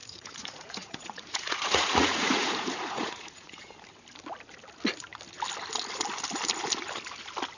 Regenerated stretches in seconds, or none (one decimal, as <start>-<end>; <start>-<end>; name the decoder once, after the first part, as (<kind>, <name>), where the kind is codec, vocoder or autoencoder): 0.0-3.7 (vocoder, Vocos)